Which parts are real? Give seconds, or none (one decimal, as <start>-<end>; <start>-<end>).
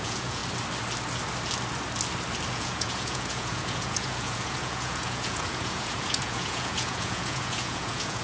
0.4-2.5